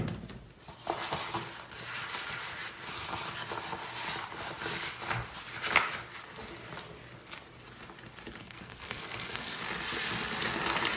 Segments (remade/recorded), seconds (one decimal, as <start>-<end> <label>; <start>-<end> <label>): 0.0-8.4 recorded; 8.4-9.6 remade; 9.6-11.0 recorded